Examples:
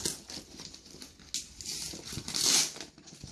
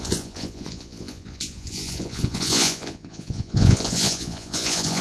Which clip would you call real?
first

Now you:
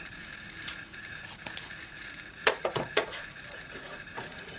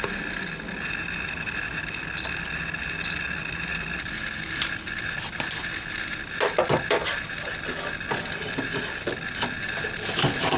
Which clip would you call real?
second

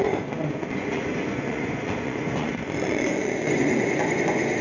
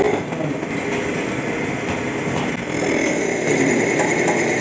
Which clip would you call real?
second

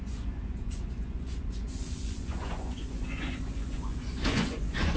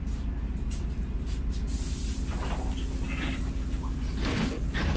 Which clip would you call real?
second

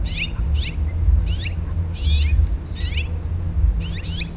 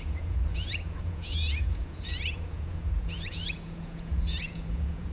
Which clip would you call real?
first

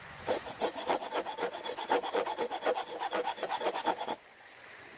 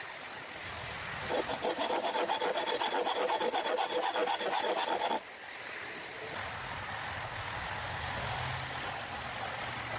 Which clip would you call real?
second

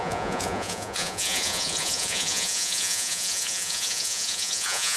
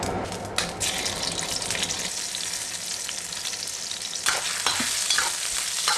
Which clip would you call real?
second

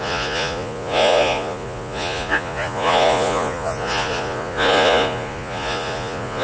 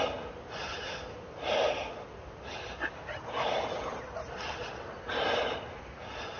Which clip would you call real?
second